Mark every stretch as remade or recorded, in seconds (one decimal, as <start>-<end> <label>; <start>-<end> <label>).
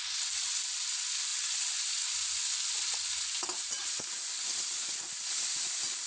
0.0-6.1 recorded